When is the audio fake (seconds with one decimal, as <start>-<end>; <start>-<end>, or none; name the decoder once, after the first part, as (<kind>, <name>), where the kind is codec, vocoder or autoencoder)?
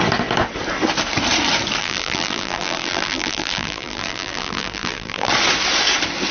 1.8-5.3 (vocoder, BigVGAN v2)